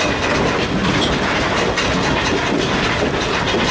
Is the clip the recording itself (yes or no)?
yes